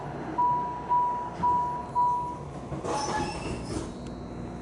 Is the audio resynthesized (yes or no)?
no